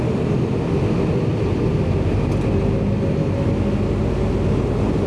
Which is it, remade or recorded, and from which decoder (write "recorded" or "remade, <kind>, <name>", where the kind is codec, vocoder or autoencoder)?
recorded